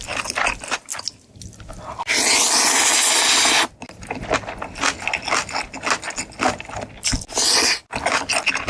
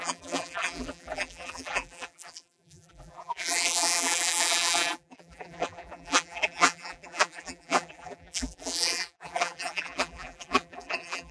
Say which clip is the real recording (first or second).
first